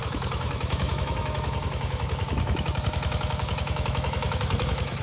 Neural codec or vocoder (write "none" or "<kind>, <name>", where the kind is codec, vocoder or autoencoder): autoencoder, DAC-VAE